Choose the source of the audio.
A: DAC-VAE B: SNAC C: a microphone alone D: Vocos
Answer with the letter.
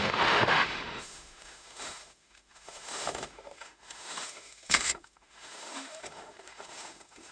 A